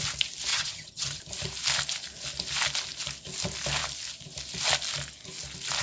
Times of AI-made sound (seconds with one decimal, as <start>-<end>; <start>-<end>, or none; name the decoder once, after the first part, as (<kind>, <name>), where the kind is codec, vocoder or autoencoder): 0.5-1.2 (vocoder, HiFi-GAN)